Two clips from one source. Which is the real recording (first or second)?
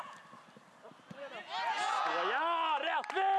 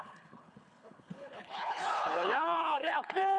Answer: first